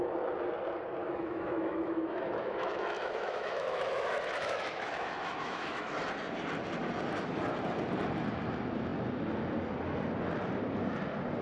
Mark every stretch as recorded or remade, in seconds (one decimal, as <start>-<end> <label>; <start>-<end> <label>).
0.0-1.0 recorded; 1.0-5.9 remade; 5.9-11.4 recorded

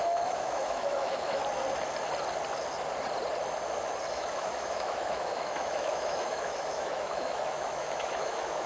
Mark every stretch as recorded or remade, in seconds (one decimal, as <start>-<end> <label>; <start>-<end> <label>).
0.0-1.4 remade; 1.4-4.1 recorded; 4.1-8.7 remade

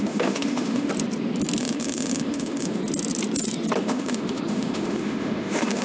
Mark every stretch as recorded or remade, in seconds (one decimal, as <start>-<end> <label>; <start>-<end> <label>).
0.0-0.9 remade; 0.9-1.6 recorded; 1.6-2.8 remade; 2.8-3.8 recorded; 3.8-5.8 remade

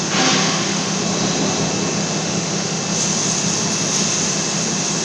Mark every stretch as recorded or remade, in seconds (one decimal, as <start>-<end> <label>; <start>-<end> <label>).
0.0-0.4 recorded; 0.4-1.0 remade; 1.0-2.2 recorded; 2.2-2.8 remade; 2.8-5.0 recorded

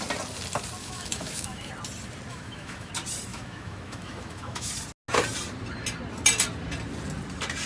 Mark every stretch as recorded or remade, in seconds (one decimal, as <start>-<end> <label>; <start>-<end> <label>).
0.0-0.8 recorded; 0.8-1.7 remade; 1.7-2.3 recorded; 2.3-2.9 remade; 2.9-3.3 recorded; 3.3-4.7 remade; 4.7-7.7 recorded